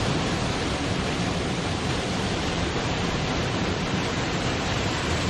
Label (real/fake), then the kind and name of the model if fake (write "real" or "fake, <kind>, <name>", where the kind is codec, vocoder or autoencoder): fake, vocoder, BigVGAN v2